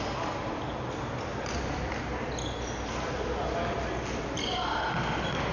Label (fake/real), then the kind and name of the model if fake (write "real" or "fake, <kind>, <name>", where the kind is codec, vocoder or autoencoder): real